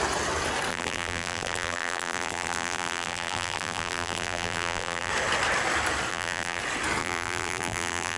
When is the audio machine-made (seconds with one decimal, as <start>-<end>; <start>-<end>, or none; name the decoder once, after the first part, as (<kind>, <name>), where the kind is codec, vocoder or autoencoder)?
0.7-5.1 (vocoder, BigVGAN v2); 6.1-6.6; 7.0-8.2